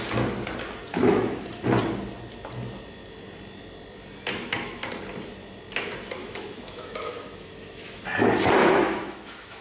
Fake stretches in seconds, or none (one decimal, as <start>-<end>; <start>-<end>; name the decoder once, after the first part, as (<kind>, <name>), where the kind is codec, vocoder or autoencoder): 0.9-1.6 (autoencoder, DAC-VAE); 6.2-8.0; 8.6-9.6

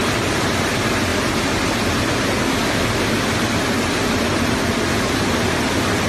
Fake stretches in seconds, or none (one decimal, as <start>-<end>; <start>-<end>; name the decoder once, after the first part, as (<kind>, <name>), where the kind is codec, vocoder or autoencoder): none

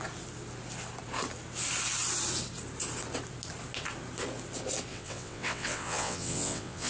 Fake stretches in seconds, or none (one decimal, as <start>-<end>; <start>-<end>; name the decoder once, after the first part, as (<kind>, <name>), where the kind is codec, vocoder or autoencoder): 4.9-6.9 (vocoder, WaveNeXt)

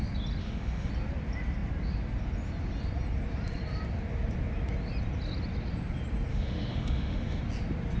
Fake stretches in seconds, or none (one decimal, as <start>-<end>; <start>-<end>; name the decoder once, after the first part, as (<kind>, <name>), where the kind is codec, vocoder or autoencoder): 0.4-0.9 (autoencoder, DAC-VAE); 6.3-7.4

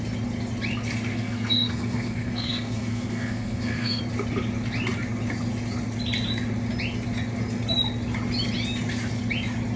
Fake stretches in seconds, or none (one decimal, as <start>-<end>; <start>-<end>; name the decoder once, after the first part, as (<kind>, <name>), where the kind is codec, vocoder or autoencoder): 1.1-4.0 (codec, SNAC)

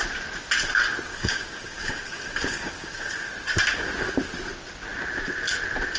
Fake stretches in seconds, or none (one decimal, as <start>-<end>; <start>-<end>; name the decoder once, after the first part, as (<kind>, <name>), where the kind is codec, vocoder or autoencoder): 1.1-3.3 (codec, DAC)

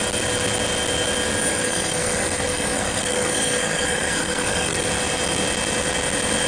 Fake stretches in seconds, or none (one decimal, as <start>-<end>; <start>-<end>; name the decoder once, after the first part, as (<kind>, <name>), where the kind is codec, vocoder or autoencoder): 1.5-4.9 (codec, SNAC)